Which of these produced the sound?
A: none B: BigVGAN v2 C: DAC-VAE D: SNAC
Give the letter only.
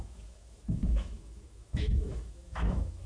C